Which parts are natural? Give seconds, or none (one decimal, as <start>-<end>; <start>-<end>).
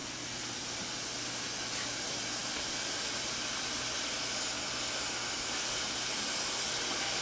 0.0-7.2